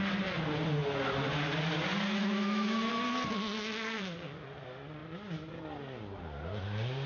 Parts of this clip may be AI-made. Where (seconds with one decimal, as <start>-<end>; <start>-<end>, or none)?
2.2-2.9